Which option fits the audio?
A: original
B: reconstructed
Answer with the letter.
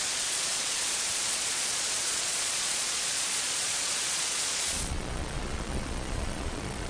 B